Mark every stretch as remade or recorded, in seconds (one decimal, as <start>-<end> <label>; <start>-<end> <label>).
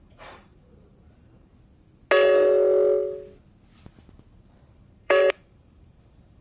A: 0.0-1.5 remade; 1.5-4.7 recorded; 4.7-6.4 remade